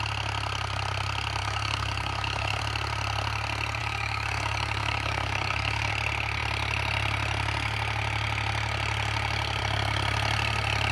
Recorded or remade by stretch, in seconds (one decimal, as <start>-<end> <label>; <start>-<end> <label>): 0.0-1.4 recorded; 1.4-2.6 remade; 2.6-3.8 recorded; 3.8-5.9 remade; 5.9-10.9 recorded